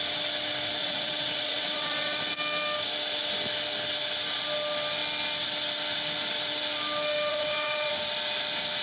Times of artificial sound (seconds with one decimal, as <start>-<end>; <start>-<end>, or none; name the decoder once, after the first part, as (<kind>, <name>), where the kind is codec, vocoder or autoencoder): 0.8-2.2 (vocoder, WaveNeXt); 7.3-7.9